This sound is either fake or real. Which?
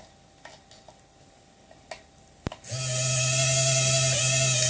real